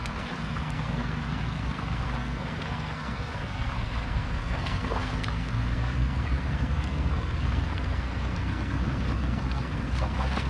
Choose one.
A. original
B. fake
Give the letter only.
B